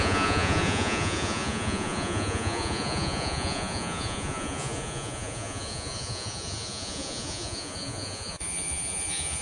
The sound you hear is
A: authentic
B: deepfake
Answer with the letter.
B